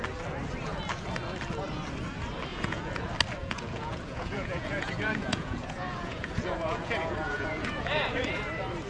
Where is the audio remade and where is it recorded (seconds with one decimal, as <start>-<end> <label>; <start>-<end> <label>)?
0.0-2.5 recorded; 2.5-3.0 remade; 3.0-3.4 recorded; 3.4-7.9 remade; 7.9-8.9 recorded